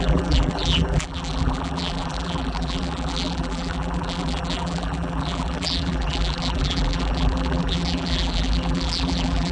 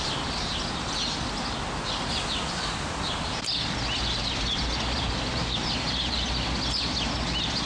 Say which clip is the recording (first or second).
second